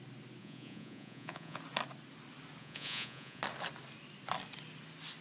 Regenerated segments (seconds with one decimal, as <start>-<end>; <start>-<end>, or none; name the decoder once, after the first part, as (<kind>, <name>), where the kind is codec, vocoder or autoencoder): 0.4-1.6 (vocoder, Vocos); 2.6-3.4